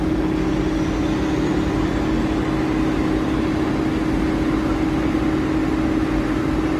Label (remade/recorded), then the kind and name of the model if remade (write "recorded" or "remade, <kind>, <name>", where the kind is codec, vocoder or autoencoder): recorded